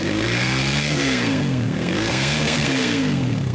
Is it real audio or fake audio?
fake